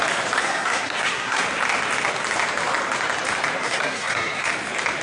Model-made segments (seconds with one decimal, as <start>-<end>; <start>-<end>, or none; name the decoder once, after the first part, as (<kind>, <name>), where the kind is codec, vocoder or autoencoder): 0.4-1.4 (codec, SNAC); 3.6-4.5